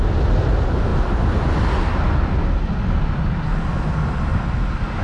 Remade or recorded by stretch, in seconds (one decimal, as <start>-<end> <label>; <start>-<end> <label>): 0.0-5.0 recorded